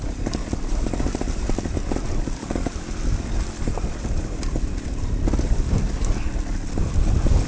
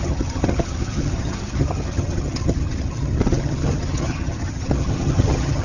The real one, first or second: first